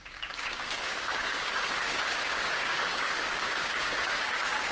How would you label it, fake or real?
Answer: fake